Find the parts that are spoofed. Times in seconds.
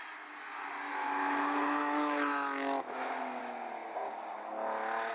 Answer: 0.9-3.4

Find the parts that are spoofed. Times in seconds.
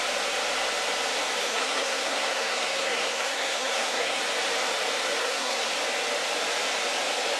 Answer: 1.4-4.2; 5.2-5.7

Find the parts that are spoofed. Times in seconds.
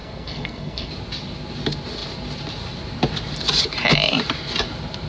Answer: 0.0-0.9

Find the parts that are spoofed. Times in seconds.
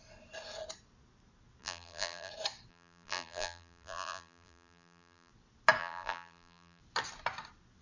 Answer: 1.6-2.3; 2.7-5.3; 5.8-6.8